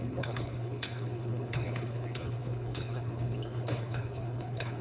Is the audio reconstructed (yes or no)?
yes